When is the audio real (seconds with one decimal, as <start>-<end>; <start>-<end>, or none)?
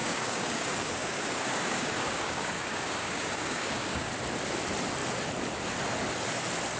4.1-6.8